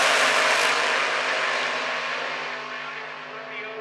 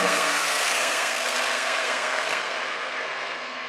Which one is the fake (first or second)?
second